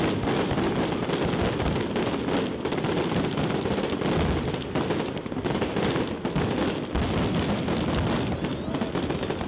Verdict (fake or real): real